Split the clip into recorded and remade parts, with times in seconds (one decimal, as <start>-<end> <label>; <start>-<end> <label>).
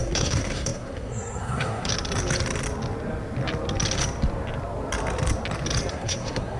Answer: 0.0-1.9 remade; 1.9-5.9 recorded; 5.9-6.6 remade